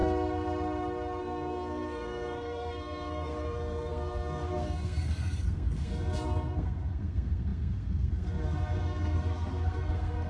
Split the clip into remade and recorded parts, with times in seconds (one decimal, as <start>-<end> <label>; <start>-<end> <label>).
0.0-1.2 recorded; 1.2-10.3 remade